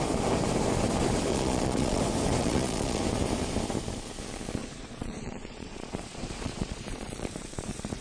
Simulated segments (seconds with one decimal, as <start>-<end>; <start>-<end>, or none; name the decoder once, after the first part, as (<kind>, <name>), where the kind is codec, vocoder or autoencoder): 1.3-2.0 (vocoder, Vocos); 2.4-3.0; 4.6-8.0